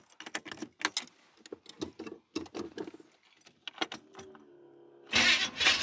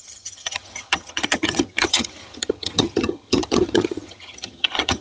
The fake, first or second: second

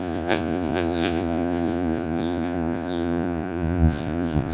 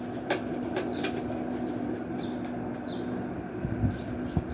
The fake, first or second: first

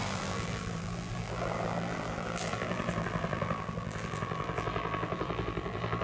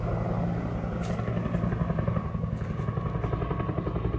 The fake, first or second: first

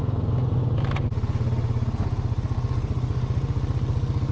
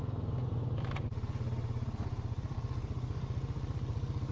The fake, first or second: second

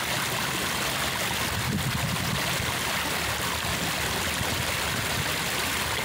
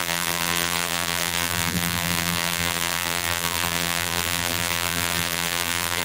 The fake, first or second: second